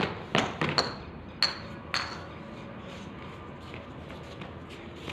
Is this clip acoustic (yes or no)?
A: yes